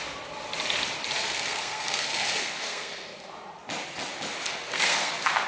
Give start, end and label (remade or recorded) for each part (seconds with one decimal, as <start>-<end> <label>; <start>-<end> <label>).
0.0-1.2 recorded; 1.2-3.3 remade; 3.3-4.5 recorded; 4.5-5.1 remade; 5.1-5.5 recorded